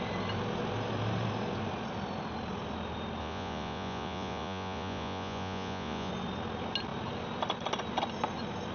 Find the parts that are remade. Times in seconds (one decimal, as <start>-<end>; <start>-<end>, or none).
3.2-6.1